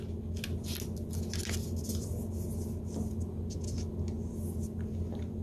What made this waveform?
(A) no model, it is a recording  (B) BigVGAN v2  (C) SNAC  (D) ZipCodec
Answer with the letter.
A